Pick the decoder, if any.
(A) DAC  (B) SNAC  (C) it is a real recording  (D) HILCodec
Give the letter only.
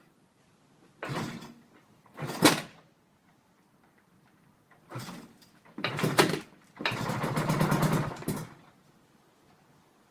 C